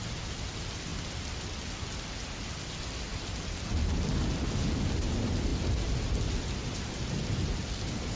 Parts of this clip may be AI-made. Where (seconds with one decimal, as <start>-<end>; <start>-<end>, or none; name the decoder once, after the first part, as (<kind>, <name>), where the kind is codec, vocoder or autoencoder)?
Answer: none